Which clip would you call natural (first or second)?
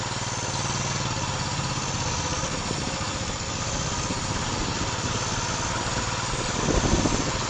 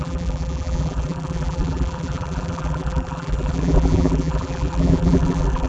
first